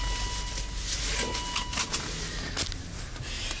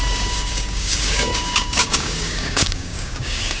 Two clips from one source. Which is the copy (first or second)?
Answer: second